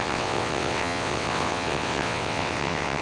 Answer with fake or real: fake